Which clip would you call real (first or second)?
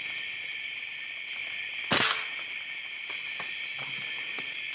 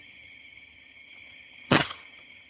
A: first